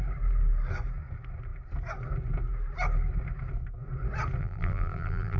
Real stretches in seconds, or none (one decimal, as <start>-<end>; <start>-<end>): 0.0-4.4

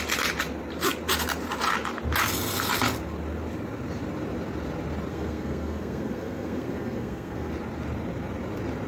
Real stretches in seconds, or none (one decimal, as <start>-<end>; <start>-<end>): 0.0-5.1; 7.5-8.9

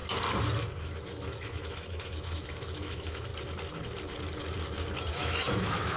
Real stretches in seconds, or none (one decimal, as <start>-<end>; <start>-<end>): 0.0-0.8; 3.3-5.1